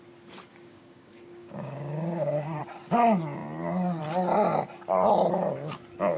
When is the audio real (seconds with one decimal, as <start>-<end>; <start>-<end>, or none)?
0.0-0.5; 2.6-6.2